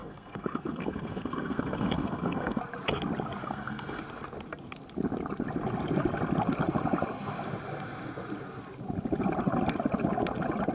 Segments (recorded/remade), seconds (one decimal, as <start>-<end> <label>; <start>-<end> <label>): 0.0-2.6 remade; 2.6-3.4 recorded; 3.4-4.0 remade; 4.0-10.7 recorded